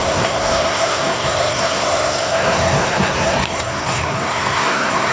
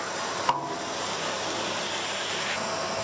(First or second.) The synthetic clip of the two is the first